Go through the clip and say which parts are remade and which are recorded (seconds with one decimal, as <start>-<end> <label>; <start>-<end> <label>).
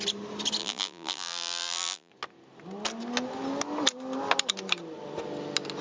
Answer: 0.0-0.6 recorded; 0.6-2.1 remade; 2.1-5.8 recorded